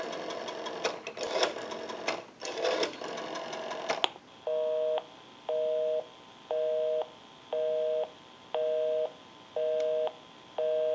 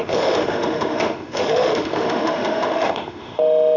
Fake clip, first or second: second